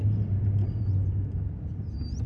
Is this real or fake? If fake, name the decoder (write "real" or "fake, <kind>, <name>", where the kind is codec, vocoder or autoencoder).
real